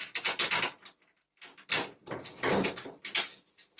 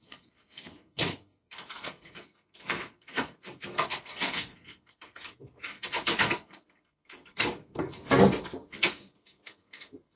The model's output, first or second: second